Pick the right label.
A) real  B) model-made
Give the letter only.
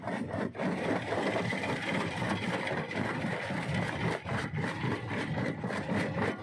B